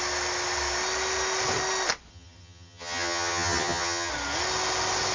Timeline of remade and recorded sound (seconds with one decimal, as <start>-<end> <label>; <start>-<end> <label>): 0.0-2.1 recorded; 2.1-4.1 remade; 4.1-5.1 recorded